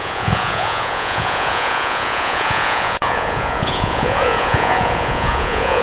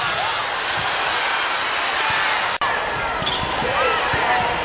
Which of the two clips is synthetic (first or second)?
first